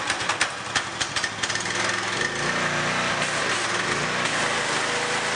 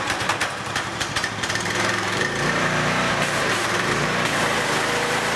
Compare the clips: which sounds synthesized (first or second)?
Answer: second